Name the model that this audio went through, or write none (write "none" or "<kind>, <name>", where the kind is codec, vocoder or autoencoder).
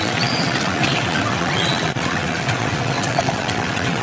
vocoder, WaveNeXt